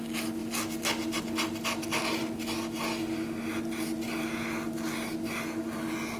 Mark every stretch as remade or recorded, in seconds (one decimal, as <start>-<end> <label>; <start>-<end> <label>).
0.0-6.2 recorded